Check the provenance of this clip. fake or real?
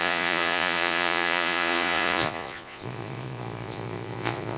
fake